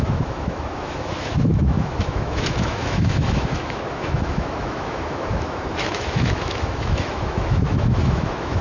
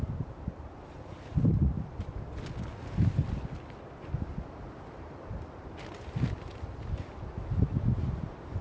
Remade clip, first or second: first